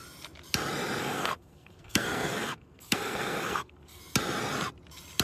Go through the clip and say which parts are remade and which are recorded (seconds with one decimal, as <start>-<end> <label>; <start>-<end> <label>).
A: 0.0-1.0 recorded; 1.0-4.0 remade; 4.0-5.2 recorded